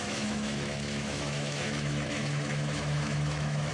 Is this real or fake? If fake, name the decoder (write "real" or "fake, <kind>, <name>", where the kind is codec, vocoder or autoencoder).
fake, autoencoder, DAC-VAE